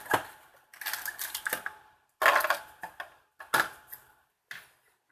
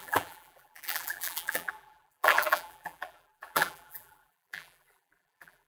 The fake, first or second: second